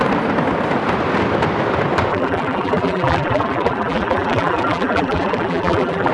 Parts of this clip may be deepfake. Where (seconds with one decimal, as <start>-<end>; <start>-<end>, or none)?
2.1-6.1